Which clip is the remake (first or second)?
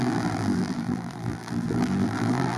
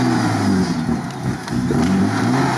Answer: first